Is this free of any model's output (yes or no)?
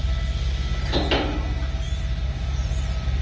yes